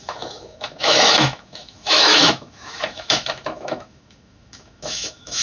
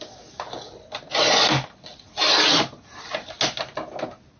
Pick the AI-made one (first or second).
first